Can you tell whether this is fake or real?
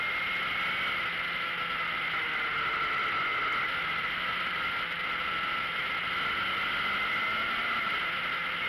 real